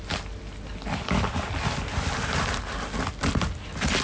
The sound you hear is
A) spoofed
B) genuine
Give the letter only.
B